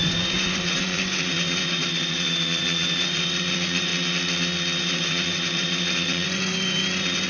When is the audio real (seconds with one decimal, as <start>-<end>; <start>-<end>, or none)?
3.9-4.8

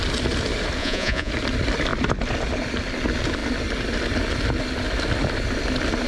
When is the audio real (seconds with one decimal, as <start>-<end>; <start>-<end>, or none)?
0.0-0.8; 1.3-6.1

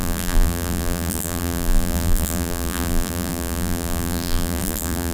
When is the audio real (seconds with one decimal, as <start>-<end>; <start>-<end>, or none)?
none

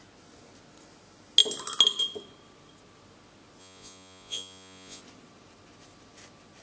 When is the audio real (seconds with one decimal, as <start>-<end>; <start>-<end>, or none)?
0.0-3.6; 5.0-6.6